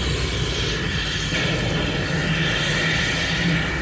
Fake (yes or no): no